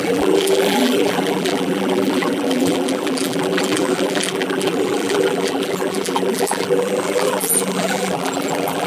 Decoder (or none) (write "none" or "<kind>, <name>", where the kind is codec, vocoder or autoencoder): vocoder, BigVGAN v2